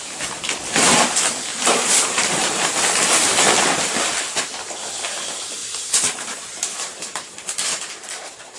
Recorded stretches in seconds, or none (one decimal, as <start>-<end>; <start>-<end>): 0.0-1.5; 2.7-5.6